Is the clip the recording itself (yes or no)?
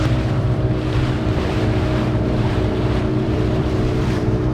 no